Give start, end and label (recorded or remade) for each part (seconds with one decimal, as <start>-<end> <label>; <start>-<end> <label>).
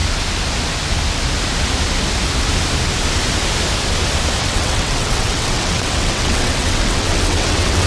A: 0.0-4.4 recorded; 4.4-7.9 remade